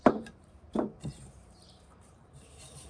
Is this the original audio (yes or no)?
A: no